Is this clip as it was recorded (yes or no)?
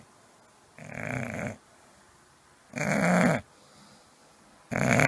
yes